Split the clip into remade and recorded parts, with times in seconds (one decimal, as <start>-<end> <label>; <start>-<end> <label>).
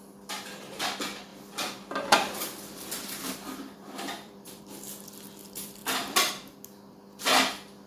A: 0.0-1.3 recorded; 1.3-4.6 remade; 4.6-7.9 recorded